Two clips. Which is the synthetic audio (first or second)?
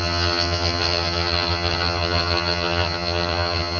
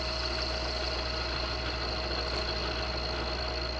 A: first